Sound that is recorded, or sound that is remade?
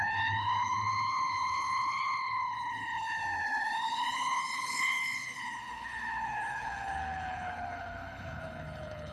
remade